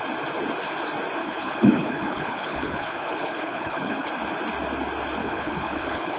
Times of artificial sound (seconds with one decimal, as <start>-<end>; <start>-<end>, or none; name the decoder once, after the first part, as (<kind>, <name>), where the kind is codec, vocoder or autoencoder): 1.2-4.1 (codec, HILCodec); 5.2-6.2

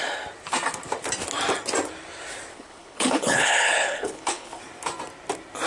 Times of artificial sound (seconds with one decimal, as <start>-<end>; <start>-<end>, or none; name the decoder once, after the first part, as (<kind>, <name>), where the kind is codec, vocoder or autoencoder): 2.5-4.6 (codec, HILCodec)

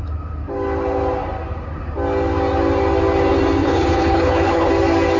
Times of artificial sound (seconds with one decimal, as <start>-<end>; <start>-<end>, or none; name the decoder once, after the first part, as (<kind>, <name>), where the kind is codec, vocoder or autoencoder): 3.6-4.7 (codec, HILCodec)

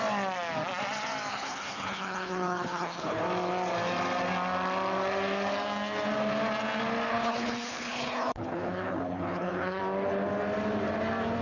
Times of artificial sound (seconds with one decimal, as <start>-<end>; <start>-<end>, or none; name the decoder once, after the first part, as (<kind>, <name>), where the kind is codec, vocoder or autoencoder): 1.3-3.2 (codec, HILCodec); 7.1-9.8

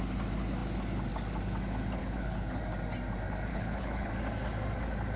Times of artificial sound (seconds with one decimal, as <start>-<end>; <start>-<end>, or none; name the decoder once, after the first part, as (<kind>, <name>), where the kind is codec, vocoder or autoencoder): 2.0-2.6 (codec, HILCodec); 3.5-4.1

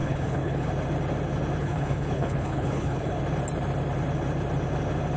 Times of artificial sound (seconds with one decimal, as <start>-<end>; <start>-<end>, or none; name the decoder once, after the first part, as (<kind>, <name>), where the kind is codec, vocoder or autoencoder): 0.0-0.7 (codec, HILCodec); 1.6-3.2

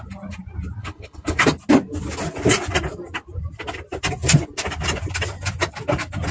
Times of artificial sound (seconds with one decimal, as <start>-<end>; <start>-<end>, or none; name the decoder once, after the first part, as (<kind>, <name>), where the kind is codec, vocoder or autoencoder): 0.8-1.4 (codec, HILCodec)

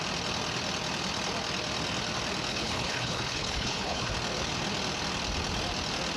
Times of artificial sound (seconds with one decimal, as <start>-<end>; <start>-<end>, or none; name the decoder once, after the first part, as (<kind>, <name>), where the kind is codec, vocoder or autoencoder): 2.5-4.1 (codec, HILCodec)